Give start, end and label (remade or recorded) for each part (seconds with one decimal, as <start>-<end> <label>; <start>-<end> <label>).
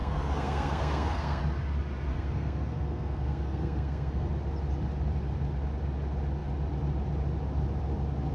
0.0-1.4 remade; 1.4-2.1 recorded; 2.1-4.3 remade; 4.3-8.3 recorded